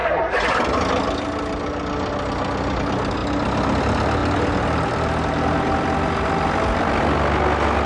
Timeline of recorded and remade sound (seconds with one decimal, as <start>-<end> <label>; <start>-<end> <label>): 0.0-7.9 recorded